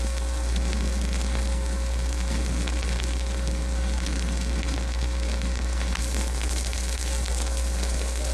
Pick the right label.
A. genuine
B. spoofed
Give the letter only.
B